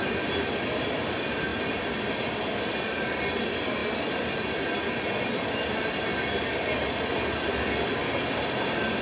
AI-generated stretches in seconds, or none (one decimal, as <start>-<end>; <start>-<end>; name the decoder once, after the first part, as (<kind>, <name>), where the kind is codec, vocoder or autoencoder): none